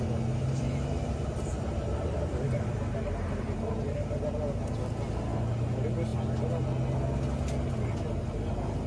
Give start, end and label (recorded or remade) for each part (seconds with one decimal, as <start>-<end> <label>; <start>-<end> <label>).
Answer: 0.0-0.4 recorded; 0.4-4.3 remade; 4.3-8.9 recorded